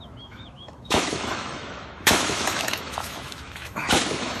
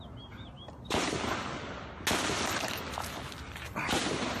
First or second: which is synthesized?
first